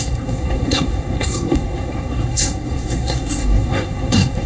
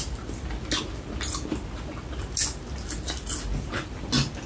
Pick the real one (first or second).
second